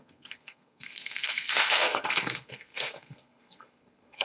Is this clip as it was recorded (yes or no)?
no